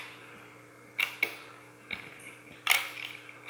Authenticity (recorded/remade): recorded